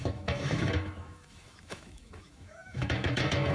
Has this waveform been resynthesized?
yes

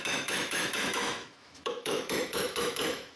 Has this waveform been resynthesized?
yes